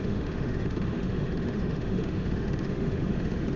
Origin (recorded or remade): remade